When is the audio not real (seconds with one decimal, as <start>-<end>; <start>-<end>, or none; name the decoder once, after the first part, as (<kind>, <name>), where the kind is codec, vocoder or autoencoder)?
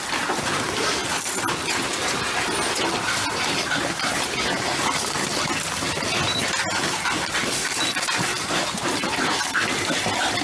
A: none